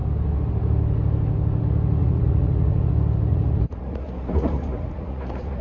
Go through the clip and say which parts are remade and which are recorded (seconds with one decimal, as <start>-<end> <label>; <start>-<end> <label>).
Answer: 0.0-2.0 recorded; 2.0-2.9 remade; 2.9-3.3 recorded; 3.3-5.6 remade